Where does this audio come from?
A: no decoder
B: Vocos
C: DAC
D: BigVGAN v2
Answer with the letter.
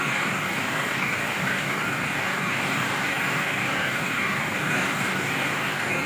C